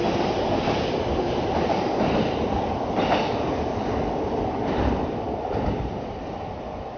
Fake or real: fake